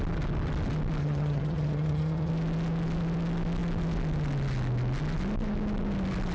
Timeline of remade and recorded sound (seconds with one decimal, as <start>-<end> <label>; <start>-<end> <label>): 0.0-1.0 recorded; 1.0-2.3 remade; 2.3-6.3 recorded